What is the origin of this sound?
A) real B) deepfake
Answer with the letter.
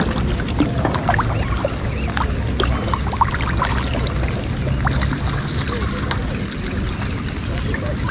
A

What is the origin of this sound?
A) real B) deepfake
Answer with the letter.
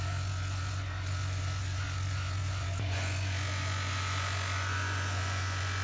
B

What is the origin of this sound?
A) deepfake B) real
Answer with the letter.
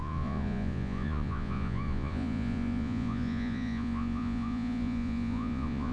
A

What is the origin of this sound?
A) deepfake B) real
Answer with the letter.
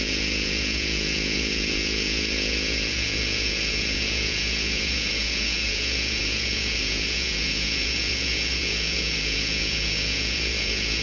A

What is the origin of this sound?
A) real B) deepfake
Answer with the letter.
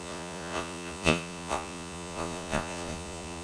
B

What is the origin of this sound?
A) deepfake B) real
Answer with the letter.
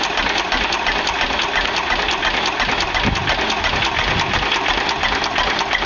B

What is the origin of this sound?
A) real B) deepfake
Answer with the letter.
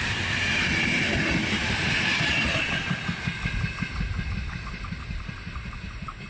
A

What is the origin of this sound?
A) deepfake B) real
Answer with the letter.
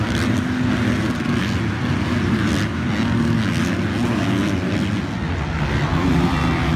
B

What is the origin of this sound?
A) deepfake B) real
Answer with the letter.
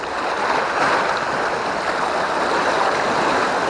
B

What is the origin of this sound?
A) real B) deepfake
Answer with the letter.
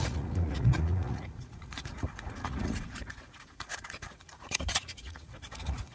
B